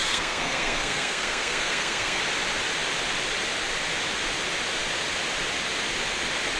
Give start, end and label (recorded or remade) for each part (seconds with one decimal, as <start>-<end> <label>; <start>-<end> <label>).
0.0-2.2 remade; 2.2-6.6 recorded